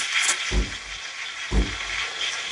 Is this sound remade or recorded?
recorded